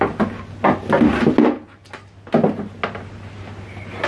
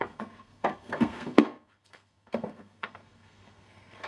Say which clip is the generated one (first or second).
second